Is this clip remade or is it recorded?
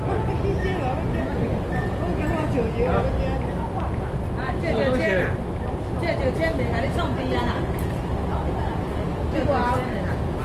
recorded